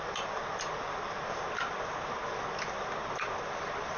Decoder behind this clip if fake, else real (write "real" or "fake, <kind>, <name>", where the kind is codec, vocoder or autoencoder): real